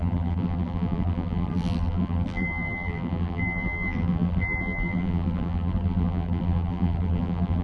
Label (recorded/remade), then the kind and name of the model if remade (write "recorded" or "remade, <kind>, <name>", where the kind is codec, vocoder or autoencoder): remade, vocoder, BigVGAN v2